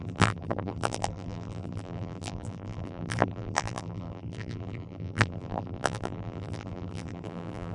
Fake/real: fake